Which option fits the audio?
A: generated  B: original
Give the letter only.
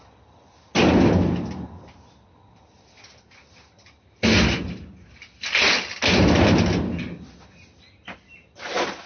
B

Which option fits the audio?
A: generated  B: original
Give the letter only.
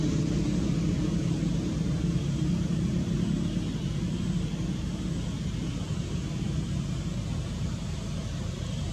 B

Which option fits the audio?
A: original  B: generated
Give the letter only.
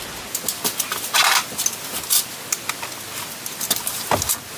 A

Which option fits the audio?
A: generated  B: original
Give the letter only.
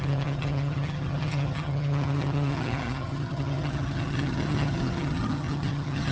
A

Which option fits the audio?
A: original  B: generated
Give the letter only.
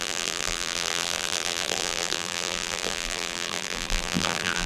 B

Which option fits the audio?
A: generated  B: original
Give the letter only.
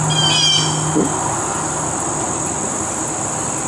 B